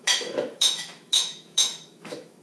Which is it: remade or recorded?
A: remade